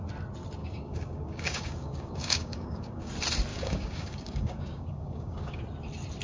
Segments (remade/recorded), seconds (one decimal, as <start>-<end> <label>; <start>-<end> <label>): 0.0-0.6 recorded; 0.6-3.1 remade; 3.1-3.5 recorded; 3.5-5.6 remade; 5.6-6.2 recorded